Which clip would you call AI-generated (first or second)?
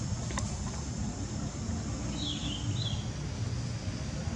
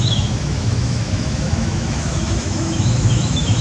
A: second